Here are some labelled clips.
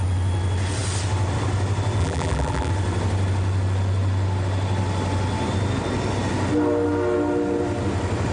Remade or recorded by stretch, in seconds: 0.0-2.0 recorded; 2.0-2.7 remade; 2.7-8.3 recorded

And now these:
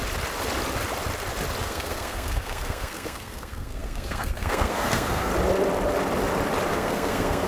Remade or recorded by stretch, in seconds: 0.0-1.6 recorded; 1.6-5.3 remade; 5.3-6.7 recorded; 6.7-7.5 remade

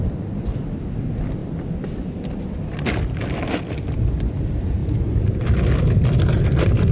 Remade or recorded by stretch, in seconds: 0.0-1.4 remade; 1.4-4.0 recorded; 4.0-6.9 remade

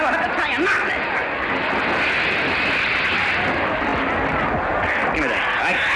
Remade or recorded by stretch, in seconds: 0.0-6.0 recorded

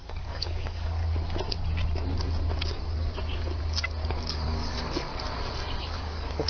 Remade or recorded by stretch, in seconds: 0.0-1.0 remade; 1.0-4.3 recorded; 4.3-5.1 remade; 5.1-5.8 recorded; 5.8-6.5 remade

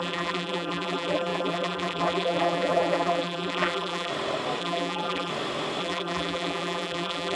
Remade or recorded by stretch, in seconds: 0.0-4.1 remade; 4.1-4.6 recorded; 4.6-5.3 remade; 5.3-5.8 recorded; 5.8-7.4 remade